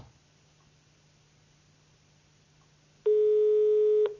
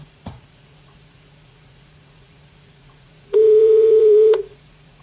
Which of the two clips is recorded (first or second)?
first